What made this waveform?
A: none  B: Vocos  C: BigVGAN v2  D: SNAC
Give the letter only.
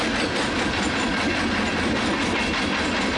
A